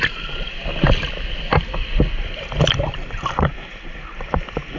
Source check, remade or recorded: recorded